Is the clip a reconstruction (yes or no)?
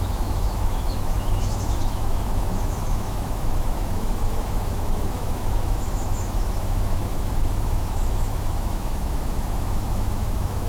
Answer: yes